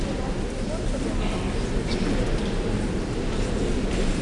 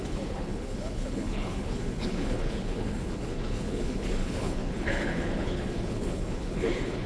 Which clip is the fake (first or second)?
second